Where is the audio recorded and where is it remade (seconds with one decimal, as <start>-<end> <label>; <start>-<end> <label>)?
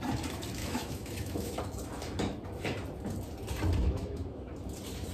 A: 0.0-0.6 recorded; 0.6-1.6 remade; 1.6-3.8 recorded; 3.8-4.5 remade; 4.5-5.1 recorded